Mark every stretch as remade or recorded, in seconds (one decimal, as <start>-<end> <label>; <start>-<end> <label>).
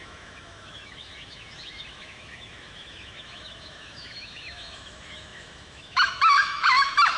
0.0-7.2 remade